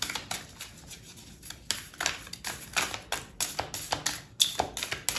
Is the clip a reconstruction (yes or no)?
no